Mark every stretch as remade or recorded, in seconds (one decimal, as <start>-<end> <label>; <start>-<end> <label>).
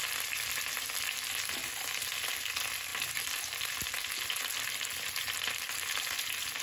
0.0-2.9 recorded; 2.9-3.8 remade; 3.8-6.6 recorded